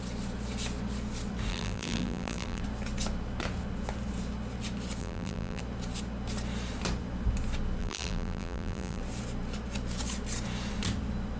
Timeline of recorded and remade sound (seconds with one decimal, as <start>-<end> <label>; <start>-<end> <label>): 0.0-1.5 recorded; 1.5-2.6 remade; 2.6-5.0 recorded; 5.0-5.6 remade; 5.6-7.8 recorded; 7.8-9.0 remade; 9.0-11.4 recorded